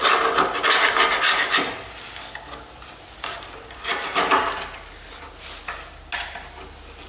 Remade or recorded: recorded